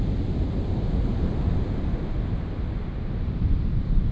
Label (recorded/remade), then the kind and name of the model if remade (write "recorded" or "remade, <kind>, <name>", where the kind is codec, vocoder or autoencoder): recorded